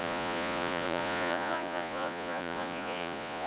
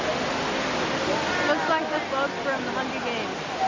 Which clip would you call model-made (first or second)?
first